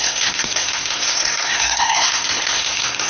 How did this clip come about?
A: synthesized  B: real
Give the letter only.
A